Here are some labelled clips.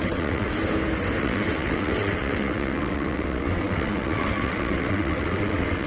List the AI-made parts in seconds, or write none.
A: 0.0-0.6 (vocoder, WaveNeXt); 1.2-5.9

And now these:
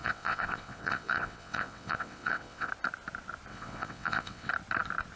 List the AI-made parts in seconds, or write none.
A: 0.0-2.7 (vocoder, WaveNeXt); 3.5-4.5

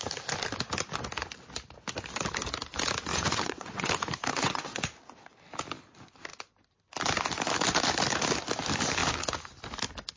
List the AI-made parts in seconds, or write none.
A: 3.1-3.9 (vocoder, WaveNeXt); 4.3-4.8

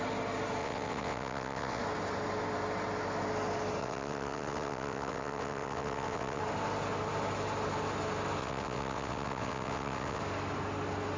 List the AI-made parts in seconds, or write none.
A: 0.6-1.8 (vocoder, WaveNeXt); 3.8-6.4; 8.4-10.2

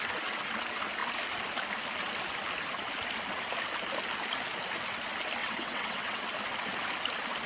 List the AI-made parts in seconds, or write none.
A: 5.4-6.2 (vocoder, WaveNeXt)

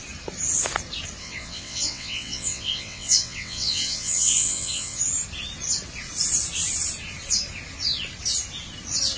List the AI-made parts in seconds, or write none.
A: 1.2-5.0 (vocoder, WaveNeXt)

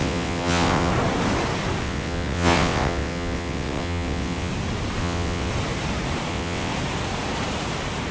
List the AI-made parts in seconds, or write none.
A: 0.0-0.9 (vocoder, WaveNeXt); 1.8-4.5; 5.0-5.5; 6.3-6.7

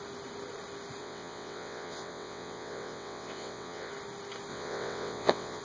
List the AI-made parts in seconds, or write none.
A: 1.0-3.9 (vocoder, WaveNeXt); 4.5-5.6